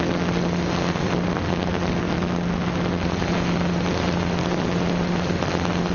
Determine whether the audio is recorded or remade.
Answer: recorded